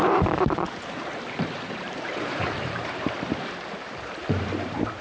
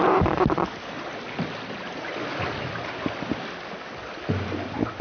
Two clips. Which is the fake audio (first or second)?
first